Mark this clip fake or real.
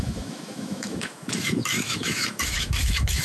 fake